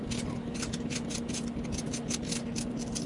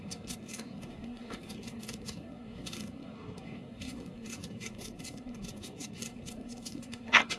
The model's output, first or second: second